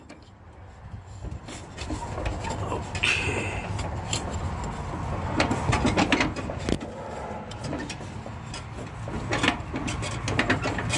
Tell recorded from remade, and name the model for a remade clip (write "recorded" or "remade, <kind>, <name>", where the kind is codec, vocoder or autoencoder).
recorded